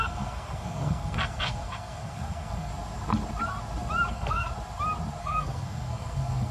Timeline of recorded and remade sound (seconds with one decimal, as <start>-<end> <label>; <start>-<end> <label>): 0.0-2.7 remade; 2.7-4.1 recorded; 4.1-4.5 remade; 4.5-5.2 recorded; 5.2-6.5 remade

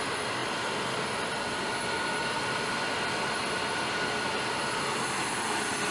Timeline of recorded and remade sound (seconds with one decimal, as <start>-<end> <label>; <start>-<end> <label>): 0.0-5.9 recorded

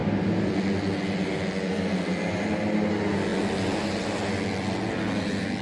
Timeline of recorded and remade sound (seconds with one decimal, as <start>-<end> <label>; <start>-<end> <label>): 0.0-5.6 recorded

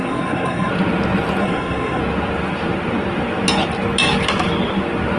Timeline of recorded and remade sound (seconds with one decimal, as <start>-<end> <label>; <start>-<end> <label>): 0.0-0.7 remade; 0.7-1.4 recorded; 1.4-2.0 remade; 2.0-5.2 recorded

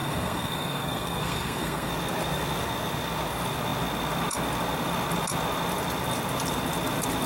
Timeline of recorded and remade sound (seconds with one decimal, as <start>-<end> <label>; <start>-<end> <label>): 0.0-1.9 remade; 1.9-7.3 recorded

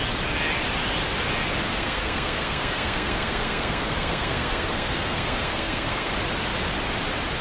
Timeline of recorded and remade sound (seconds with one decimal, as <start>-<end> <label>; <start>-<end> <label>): 0.0-1.7 recorded; 1.7-6.1 remade; 6.1-7.4 recorded

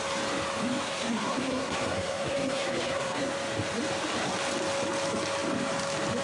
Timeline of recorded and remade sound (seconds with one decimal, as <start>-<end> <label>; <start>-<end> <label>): 0.0-0.8 recorded; 0.8-3.3 remade; 3.3-6.2 recorded